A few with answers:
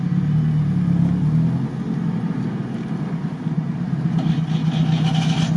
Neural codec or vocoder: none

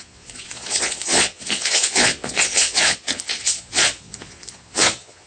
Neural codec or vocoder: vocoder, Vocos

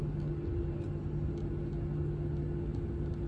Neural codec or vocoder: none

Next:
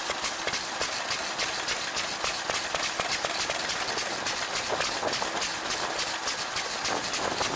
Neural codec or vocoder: none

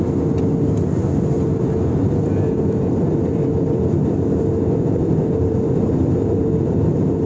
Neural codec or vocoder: none